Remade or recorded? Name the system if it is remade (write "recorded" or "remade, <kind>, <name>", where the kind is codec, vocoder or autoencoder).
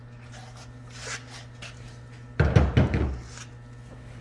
recorded